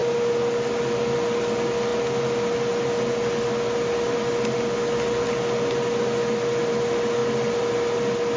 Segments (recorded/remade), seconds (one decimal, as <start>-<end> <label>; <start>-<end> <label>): 0.0-8.4 recorded